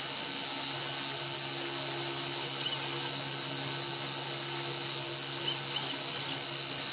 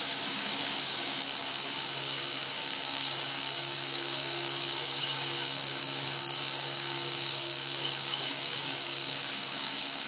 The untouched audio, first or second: first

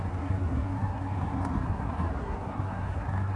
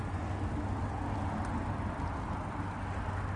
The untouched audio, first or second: second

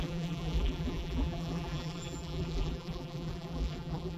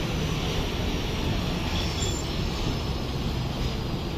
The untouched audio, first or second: second